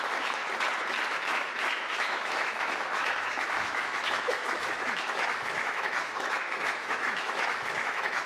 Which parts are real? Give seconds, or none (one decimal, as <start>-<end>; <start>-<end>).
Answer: 0.4-1.1